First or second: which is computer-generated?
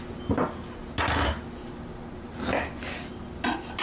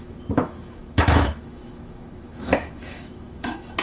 second